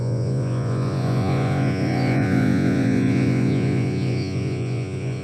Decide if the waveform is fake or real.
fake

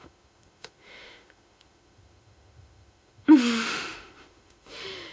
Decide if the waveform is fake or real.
fake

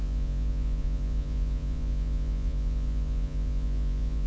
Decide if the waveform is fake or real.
fake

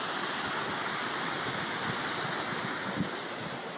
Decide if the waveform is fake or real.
real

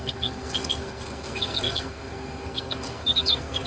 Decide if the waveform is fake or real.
fake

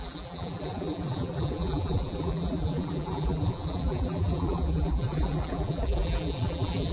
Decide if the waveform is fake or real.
fake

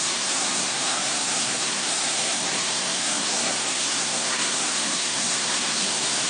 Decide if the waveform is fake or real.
fake